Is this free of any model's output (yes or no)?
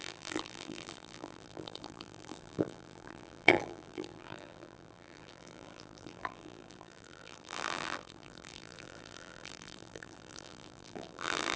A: no